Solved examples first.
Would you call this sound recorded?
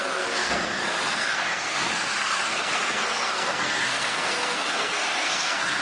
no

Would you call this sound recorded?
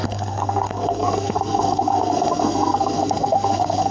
no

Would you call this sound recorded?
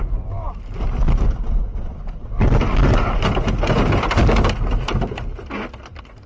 yes